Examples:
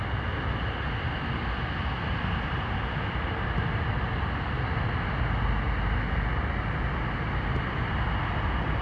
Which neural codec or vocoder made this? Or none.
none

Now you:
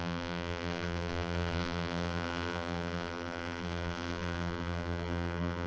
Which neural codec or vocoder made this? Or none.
vocoder, BigVGAN v2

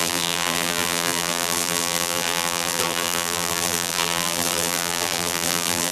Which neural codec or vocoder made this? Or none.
vocoder, BigVGAN v2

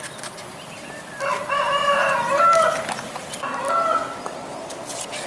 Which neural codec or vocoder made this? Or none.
none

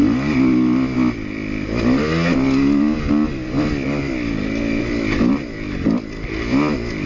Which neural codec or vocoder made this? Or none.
none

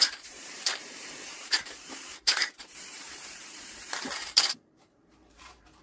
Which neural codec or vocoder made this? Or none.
vocoder, BigVGAN v2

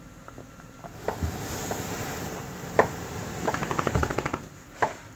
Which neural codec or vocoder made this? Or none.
vocoder, BigVGAN v2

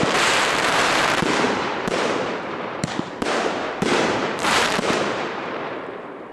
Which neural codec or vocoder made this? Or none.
vocoder, BigVGAN v2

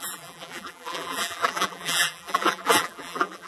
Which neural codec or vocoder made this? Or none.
vocoder, BigVGAN v2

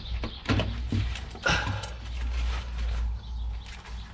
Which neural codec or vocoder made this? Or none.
none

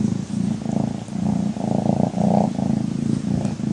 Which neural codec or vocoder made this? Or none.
none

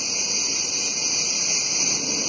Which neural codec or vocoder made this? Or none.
none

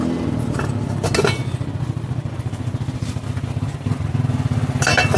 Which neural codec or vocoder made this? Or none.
none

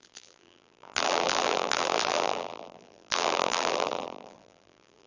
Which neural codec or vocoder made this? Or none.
vocoder, BigVGAN v2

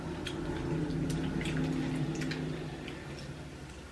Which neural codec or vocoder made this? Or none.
none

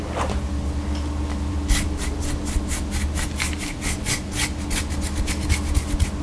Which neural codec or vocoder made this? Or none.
none